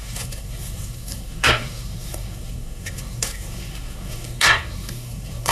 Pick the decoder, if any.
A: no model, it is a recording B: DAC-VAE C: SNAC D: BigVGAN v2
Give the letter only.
C